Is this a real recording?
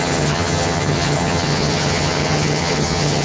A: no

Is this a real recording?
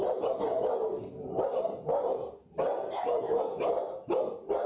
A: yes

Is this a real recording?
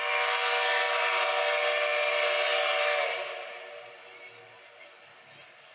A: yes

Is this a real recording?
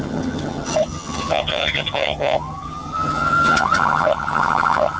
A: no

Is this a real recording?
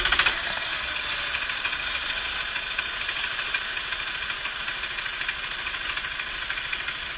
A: yes